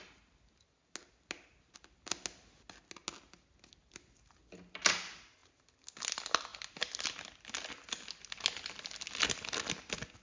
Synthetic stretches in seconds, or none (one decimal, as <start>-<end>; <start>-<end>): none